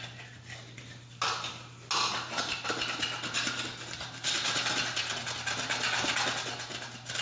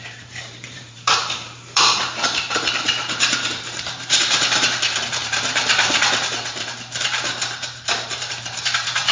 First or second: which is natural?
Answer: first